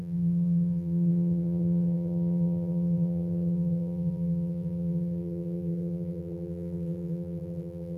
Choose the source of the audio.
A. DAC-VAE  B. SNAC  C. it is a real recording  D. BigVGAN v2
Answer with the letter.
D